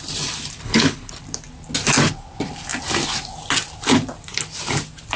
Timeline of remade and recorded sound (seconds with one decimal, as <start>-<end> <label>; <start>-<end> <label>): 0.0-0.6 recorded; 0.6-1.2 remade; 1.2-5.2 recorded